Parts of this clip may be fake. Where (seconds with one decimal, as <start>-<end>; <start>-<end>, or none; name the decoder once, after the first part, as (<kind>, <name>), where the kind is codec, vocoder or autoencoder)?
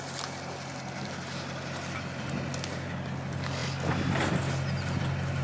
none